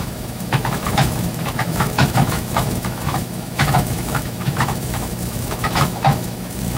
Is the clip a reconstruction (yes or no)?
yes